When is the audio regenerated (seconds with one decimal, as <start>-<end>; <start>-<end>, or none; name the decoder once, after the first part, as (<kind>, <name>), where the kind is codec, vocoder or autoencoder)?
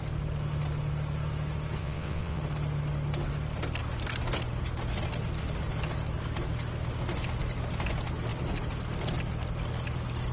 1.8-2.4 (vocoder, WaveNeXt)